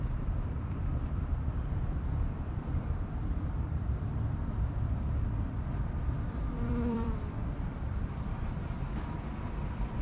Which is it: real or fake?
fake